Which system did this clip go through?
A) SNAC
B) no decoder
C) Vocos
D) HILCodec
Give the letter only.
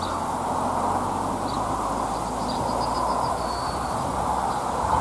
B